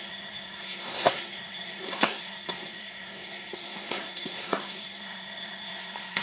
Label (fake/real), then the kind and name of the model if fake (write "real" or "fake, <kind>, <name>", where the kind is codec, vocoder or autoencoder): fake, codec, SNAC